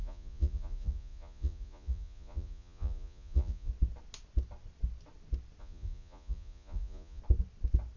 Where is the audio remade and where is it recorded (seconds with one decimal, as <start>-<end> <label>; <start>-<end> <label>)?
0.0-3.7 remade; 3.7-5.6 recorded; 5.6-7.2 remade; 7.2-8.0 recorded